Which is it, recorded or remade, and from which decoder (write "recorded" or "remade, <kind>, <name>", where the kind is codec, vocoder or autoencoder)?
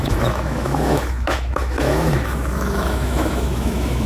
remade, autoencoder, DAC-VAE